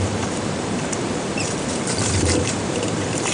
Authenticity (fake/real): fake